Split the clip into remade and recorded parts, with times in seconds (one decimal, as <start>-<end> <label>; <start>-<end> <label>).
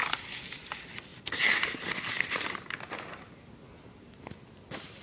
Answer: 0.0-5.0 recorded